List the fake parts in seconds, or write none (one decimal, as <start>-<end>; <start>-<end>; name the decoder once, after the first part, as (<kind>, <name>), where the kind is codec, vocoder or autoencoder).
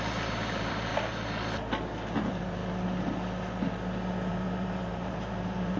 0.0-0.9 (vocoder, BigVGAN v2); 2.2-2.6; 4.3-5.8